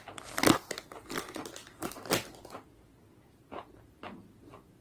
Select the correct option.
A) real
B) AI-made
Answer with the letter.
A